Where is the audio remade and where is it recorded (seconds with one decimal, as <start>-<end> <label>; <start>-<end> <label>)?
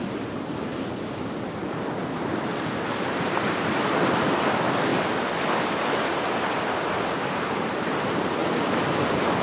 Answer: 0.0-9.4 recorded